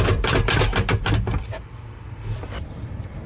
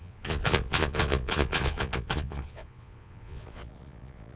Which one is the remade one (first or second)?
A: second